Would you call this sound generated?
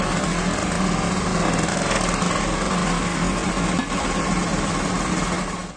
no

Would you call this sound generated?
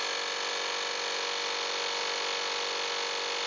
no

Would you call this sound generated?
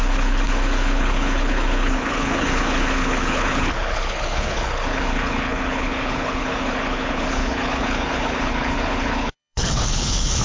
yes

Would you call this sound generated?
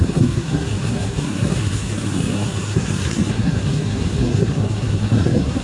yes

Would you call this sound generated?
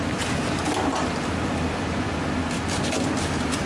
no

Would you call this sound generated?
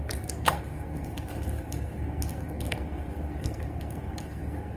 yes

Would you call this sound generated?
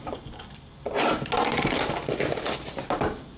no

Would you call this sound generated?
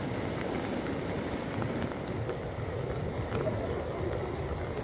no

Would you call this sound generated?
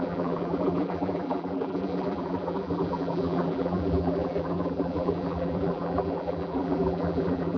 yes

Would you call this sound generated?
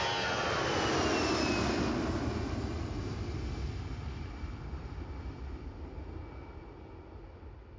no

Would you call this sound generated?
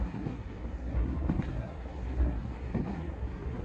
yes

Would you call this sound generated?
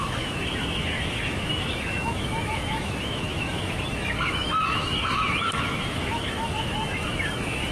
yes